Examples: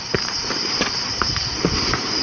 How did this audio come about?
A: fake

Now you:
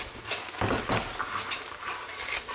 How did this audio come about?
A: real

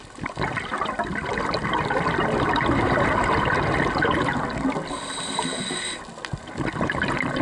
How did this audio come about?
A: real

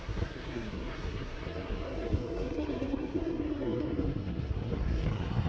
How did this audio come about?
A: fake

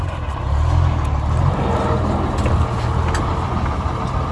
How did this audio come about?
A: real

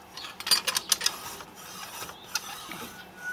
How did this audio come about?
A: real